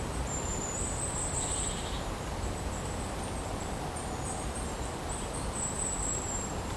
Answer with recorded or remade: remade